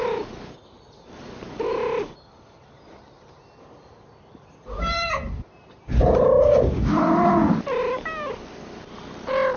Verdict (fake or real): real